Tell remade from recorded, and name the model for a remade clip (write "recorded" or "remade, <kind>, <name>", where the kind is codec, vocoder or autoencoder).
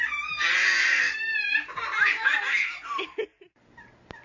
recorded